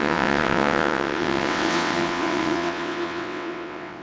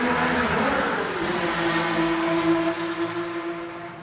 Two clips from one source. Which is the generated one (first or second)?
first